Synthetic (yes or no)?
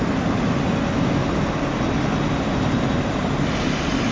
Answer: no